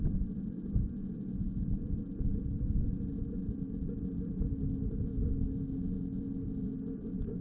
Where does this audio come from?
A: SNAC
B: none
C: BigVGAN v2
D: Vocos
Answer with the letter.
B